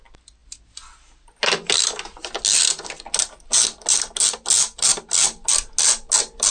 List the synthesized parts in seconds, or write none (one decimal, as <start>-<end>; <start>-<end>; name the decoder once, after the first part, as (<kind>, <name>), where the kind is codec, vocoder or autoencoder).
none